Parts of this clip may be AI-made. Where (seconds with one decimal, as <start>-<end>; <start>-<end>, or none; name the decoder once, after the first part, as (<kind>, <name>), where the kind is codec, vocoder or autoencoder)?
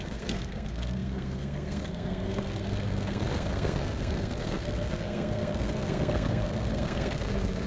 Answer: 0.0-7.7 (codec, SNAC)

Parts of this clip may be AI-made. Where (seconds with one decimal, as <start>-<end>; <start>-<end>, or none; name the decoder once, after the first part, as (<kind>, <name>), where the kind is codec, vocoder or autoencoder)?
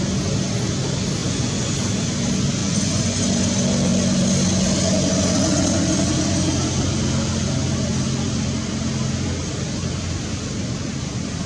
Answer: 1.2-1.7 (vocoder, Vocos); 2.6-3.2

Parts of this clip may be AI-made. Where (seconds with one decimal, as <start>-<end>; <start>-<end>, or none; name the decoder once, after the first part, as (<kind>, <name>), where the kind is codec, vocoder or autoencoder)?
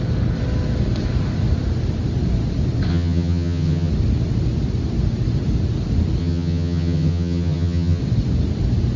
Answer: 2.9-3.9 (vocoder, HiFi-GAN); 6.2-8.0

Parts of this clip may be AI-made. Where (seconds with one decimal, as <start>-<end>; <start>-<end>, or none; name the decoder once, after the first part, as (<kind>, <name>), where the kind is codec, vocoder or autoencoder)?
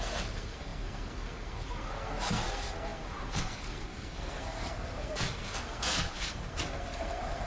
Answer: 0.0-7.5 (codec, SNAC)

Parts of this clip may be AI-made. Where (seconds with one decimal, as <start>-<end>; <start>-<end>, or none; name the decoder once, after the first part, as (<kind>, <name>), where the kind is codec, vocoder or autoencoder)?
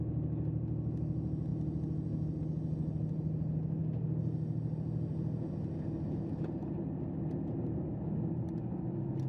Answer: none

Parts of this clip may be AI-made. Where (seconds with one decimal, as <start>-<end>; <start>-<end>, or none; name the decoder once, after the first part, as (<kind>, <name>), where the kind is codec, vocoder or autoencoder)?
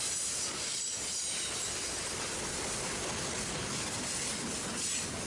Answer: none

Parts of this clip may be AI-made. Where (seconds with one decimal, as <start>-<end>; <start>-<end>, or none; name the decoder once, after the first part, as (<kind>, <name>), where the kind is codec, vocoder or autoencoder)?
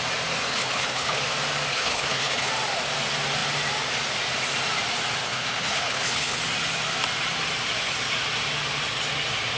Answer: 0.5-1.2 (codec, HILCodec); 1.7-2.5; 5.2-6.4